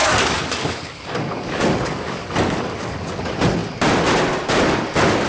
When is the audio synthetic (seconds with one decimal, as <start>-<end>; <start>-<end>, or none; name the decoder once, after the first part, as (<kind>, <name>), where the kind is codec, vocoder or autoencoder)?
0.0-3.2 (codec, DAC)